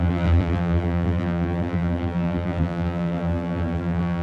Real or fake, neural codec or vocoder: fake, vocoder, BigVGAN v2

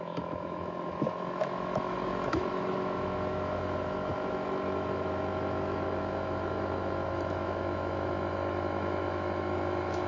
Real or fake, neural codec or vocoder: fake, autoencoder, DAC-VAE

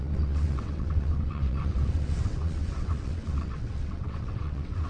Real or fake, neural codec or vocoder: fake, vocoder, WaveNeXt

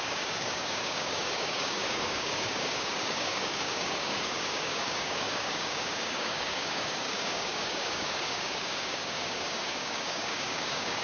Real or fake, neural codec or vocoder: fake, codec, DAC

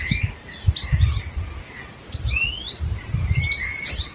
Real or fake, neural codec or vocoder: fake, vocoder, BigVGAN v2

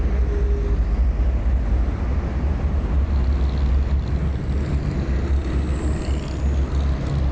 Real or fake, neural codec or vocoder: real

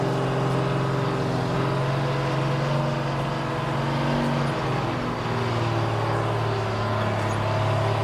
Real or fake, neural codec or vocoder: real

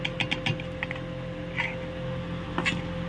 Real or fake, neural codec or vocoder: real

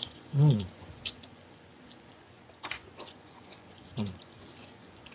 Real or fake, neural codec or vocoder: fake, vocoder, Vocos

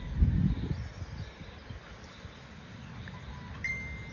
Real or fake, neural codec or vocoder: real